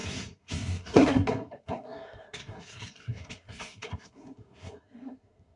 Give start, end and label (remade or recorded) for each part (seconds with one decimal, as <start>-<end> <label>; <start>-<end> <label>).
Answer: 0.0-5.6 remade